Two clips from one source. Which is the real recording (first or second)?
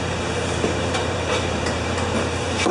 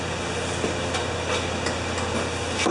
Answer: second